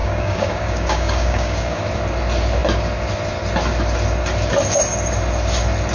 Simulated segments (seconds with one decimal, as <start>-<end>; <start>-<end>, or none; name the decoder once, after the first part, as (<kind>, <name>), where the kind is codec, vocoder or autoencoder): 0.0-1.8 (codec, DAC)